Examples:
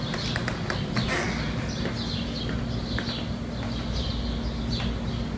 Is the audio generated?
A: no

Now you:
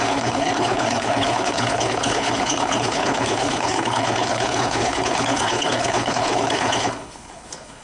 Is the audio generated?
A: yes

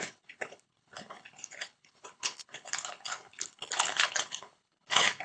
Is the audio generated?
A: yes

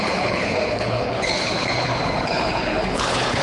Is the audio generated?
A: yes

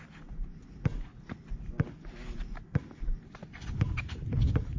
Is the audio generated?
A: no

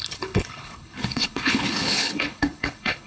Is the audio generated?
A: yes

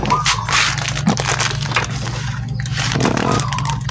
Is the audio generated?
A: no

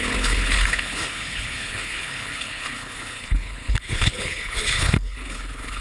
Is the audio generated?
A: yes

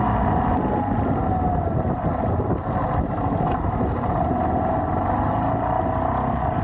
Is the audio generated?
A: no